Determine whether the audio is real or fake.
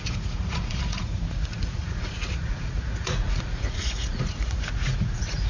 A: fake